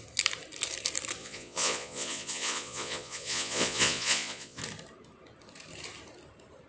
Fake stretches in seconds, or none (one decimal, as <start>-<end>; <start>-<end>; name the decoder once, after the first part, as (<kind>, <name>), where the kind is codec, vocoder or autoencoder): 1.2-4.6 (vocoder, Vocos)